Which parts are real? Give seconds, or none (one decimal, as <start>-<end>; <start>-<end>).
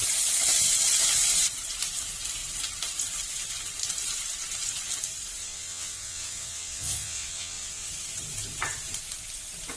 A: 0.0-5.4; 7.9-9.8